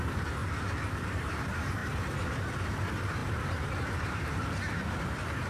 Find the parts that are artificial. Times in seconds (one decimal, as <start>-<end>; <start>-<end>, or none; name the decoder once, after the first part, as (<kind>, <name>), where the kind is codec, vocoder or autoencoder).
0.0-0.4 (vocoder, BigVGAN v2); 0.9-1.8; 2.4-5.5